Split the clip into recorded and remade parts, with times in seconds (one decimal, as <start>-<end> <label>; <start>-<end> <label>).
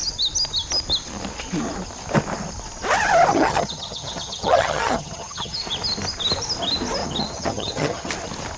0.0-3.3 recorded; 3.3-5.6 remade; 5.6-7.0 recorded; 7.0-8.1 remade; 8.1-8.6 recorded